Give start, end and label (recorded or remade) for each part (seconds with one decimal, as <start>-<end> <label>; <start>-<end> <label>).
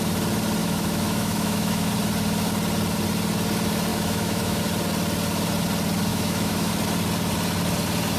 0.0-0.6 recorded; 0.6-1.9 remade; 1.9-3.9 recorded; 3.9-4.6 remade; 4.6-6.1 recorded; 6.1-6.7 remade; 6.7-8.2 recorded